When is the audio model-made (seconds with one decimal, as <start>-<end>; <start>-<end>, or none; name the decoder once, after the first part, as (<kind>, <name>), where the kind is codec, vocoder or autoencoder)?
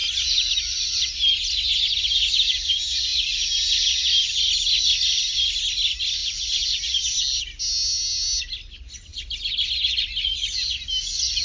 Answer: 6.2-7.0 (vocoder, Vocos)